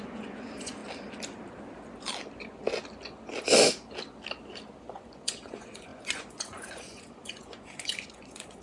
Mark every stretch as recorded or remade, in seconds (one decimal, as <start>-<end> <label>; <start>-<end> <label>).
0.0-0.8 remade; 0.8-4.8 recorded; 4.8-8.6 remade